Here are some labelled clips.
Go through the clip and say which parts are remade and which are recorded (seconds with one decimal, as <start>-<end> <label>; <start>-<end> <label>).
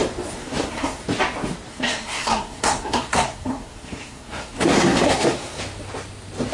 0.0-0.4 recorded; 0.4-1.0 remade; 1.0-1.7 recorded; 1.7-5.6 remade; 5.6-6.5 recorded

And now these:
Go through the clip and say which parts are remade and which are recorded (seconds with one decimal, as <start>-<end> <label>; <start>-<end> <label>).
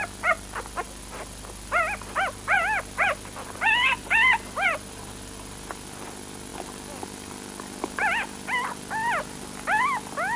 0.0-10.4 recorded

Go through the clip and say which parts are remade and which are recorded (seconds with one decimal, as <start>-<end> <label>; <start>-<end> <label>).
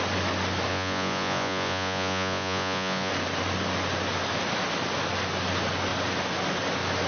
0.0-0.7 recorded; 0.7-3.1 remade; 3.1-7.1 recorded